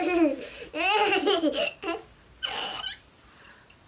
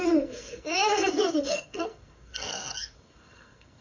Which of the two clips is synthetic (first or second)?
second